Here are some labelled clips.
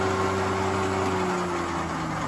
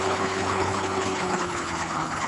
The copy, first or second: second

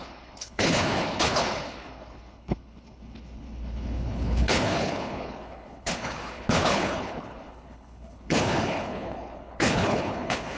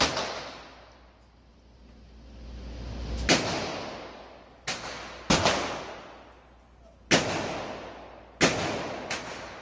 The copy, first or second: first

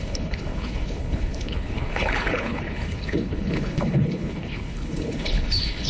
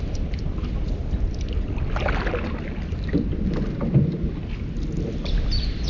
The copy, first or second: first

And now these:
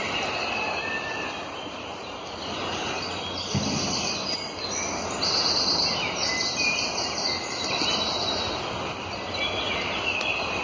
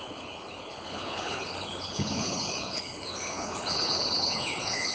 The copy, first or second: second